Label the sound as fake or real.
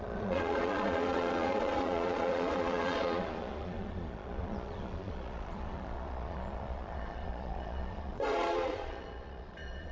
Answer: fake